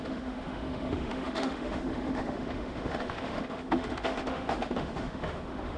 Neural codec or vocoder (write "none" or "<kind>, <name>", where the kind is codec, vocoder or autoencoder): autoencoder, DAC-VAE